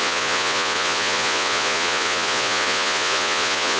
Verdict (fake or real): fake